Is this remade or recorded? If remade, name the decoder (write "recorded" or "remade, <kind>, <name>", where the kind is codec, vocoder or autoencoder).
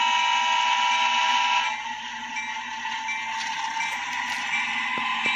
recorded